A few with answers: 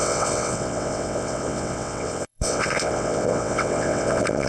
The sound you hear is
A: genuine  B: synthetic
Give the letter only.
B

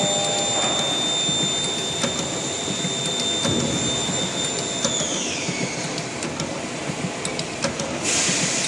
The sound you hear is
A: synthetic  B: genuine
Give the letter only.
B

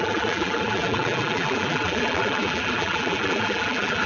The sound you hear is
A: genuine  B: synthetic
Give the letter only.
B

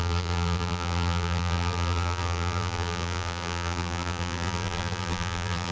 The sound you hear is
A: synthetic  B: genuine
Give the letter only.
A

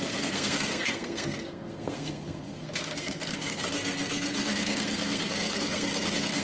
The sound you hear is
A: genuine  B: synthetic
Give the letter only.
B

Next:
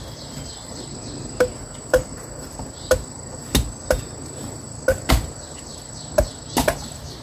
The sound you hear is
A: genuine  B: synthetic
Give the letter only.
A